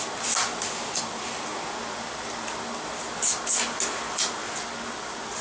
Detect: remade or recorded recorded